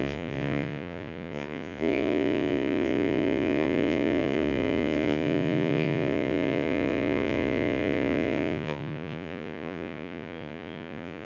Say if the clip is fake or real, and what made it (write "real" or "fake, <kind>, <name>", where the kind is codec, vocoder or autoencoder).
fake, vocoder, Vocos